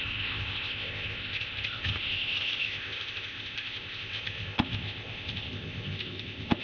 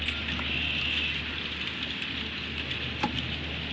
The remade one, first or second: first